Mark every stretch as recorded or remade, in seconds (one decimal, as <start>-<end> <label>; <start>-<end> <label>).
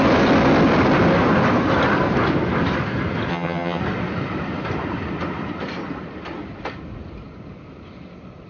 0.0-3.3 recorded; 3.3-3.8 remade; 3.8-8.5 recorded